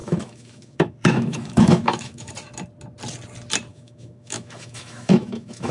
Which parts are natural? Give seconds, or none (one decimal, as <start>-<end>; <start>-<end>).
2.3-3.7